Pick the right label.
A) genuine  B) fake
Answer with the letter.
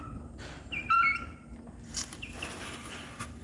B